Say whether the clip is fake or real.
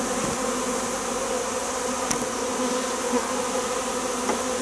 real